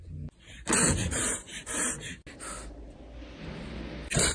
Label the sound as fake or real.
real